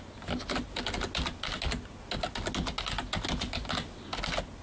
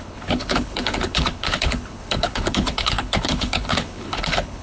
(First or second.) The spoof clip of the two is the second